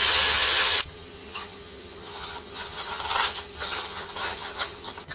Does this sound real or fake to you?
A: fake